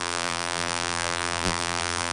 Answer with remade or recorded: remade